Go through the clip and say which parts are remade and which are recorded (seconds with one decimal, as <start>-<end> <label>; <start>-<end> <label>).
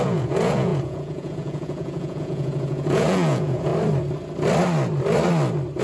0.0-3.7 remade; 3.7-5.8 recorded